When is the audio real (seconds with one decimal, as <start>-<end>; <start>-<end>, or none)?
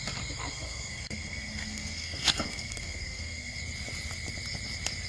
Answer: 0.0-0.5; 3.6-5.1